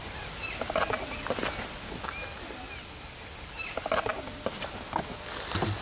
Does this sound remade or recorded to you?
recorded